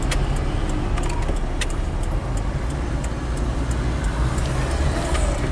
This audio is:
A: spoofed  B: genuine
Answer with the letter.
B